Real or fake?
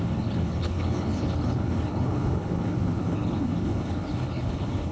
fake